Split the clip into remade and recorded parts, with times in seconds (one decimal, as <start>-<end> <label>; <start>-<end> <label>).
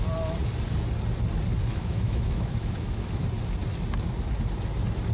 0.0-1.7 recorded; 1.7-3.2 remade; 3.2-5.1 recorded